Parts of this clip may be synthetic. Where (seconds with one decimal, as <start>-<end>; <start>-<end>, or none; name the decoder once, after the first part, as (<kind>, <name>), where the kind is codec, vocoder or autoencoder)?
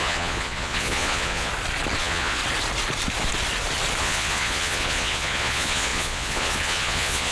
0.0-1.5 (vocoder, Vocos); 2.0-2.4; 4.0-7.3